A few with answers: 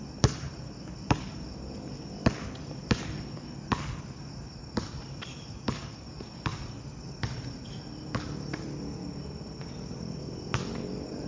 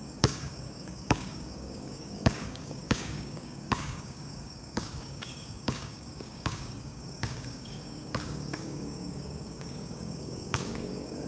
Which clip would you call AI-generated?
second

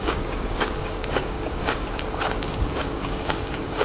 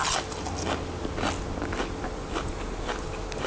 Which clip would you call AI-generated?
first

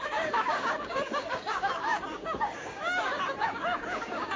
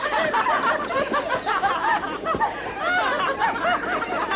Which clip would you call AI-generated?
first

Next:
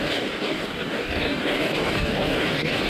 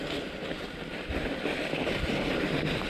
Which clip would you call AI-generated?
first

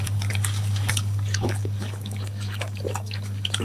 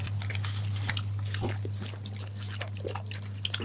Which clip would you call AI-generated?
first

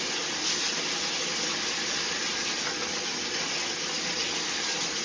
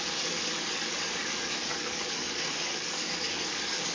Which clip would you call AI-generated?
second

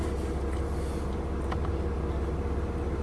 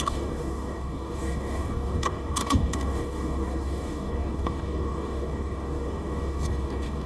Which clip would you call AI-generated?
second